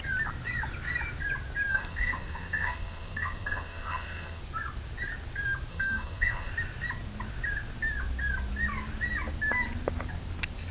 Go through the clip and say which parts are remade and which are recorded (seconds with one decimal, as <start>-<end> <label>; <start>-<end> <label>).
0.0-1.7 recorded; 1.7-4.4 remade; 4.4-5.7 recorded; 5.7-6.5 remade; 6.5-10.7 recorded